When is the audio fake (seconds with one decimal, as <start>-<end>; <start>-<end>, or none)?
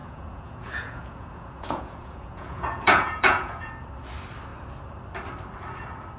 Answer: 0.0-3.7